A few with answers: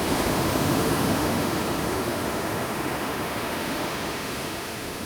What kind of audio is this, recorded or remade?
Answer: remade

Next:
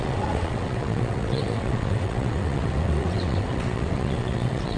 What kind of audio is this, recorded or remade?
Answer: remade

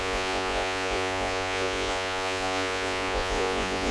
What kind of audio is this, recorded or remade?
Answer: remade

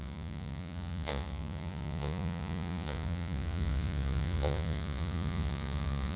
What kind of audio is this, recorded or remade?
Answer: remade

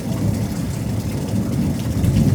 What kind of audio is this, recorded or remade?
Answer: remade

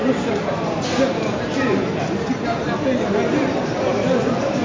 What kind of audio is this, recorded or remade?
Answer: recorded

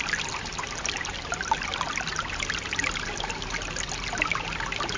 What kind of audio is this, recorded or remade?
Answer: recorded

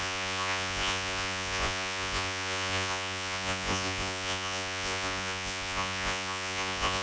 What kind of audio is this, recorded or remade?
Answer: remade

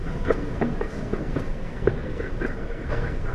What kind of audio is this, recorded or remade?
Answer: remade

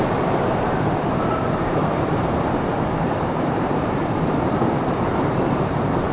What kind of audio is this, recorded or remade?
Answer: remade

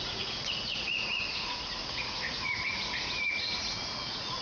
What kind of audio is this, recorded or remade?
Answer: remade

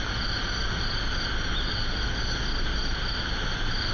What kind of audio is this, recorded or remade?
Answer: recorded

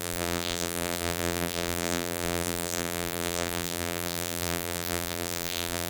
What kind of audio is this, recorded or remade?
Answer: remade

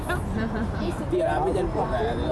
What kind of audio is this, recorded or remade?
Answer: remade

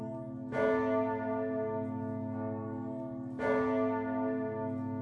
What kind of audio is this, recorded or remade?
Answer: recorded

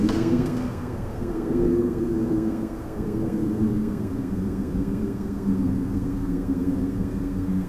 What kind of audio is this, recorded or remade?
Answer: remade